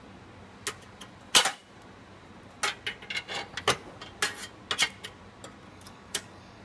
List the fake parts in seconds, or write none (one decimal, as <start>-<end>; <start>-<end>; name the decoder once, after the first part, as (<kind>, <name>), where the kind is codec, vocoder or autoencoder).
5.7-6.6 (codec, DAC)